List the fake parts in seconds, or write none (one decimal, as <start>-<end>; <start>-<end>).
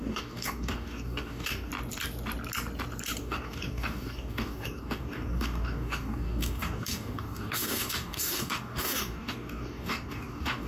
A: 0.0-1.7; 3.2-10.7